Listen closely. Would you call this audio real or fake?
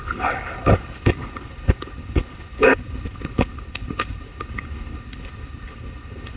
fake